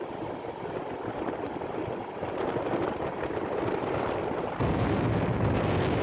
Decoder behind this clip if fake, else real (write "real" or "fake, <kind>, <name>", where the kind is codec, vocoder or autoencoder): real